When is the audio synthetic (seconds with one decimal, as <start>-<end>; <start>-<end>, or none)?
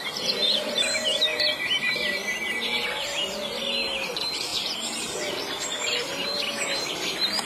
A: 1.3-3.3